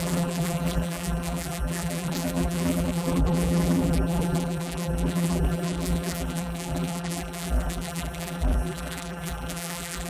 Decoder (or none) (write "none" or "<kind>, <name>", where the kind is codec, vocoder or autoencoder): vocoder, BigVGAN v2